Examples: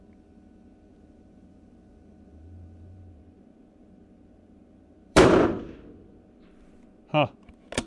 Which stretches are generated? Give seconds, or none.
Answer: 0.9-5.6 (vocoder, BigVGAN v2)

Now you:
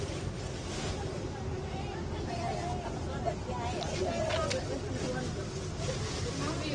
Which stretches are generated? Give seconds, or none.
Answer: none

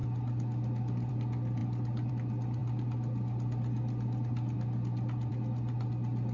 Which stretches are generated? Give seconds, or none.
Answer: none